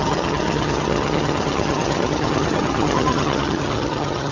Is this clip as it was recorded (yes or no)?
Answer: no